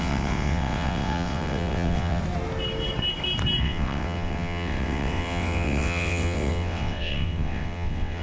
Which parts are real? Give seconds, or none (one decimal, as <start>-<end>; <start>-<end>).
2.2-3.6